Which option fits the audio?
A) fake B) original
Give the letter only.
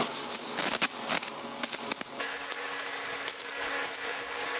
A